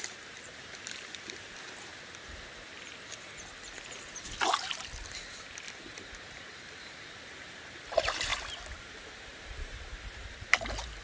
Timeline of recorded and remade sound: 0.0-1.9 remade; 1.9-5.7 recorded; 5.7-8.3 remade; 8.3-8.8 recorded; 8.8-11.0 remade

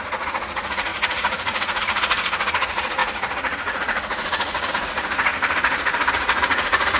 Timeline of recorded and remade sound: 0.0-5.3 remade; 5.3-6.1 recorded; 6.1-7.0 remade

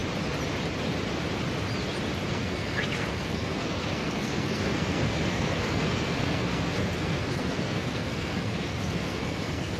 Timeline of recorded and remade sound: 0.0-2.3 recorded; 2.3-9.8 remade